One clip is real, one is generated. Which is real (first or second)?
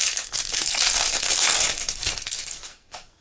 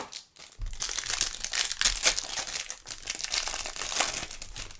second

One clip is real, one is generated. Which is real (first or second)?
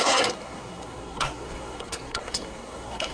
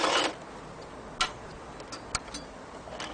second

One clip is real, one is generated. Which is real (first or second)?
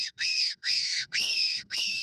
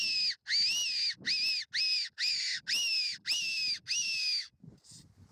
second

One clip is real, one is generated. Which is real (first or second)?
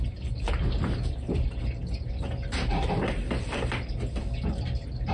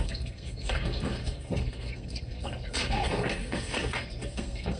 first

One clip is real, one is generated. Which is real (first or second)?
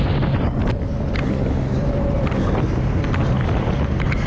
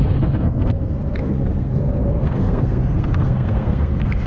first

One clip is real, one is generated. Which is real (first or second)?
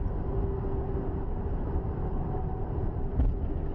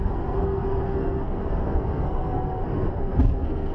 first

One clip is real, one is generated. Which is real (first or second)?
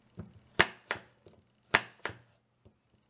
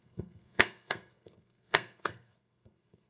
first